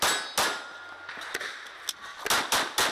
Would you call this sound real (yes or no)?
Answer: yes